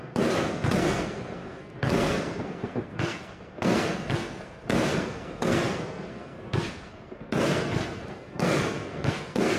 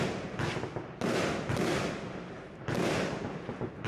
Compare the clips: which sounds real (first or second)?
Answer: second